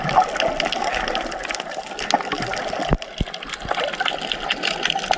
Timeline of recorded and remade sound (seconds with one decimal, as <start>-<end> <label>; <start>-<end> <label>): 0.0-5.2 recorded